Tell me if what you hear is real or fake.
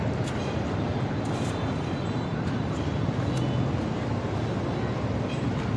real